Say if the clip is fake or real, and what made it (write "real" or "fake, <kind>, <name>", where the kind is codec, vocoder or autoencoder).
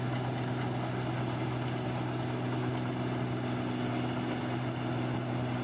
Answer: real